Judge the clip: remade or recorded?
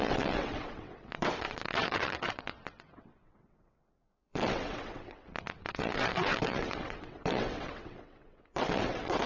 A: remade